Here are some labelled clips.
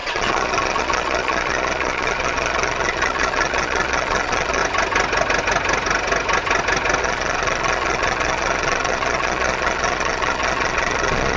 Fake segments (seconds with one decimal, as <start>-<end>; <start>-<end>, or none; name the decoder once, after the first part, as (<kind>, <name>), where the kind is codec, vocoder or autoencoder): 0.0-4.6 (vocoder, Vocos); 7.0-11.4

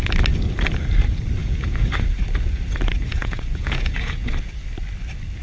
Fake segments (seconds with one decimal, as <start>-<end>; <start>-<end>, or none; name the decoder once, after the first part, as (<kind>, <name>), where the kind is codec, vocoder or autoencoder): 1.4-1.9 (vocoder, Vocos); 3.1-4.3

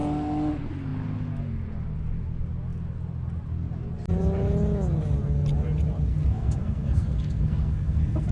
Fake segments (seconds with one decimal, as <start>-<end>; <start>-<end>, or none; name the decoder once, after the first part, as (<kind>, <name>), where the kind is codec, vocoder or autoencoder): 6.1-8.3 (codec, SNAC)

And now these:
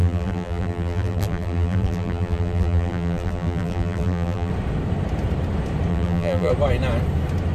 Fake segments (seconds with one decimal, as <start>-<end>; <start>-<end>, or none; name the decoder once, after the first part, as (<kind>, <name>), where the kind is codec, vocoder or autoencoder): 0.0-4.5 (vocoder, BigVGAN v2); 5.9-6.5